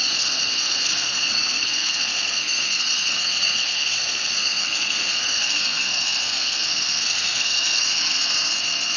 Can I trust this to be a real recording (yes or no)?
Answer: no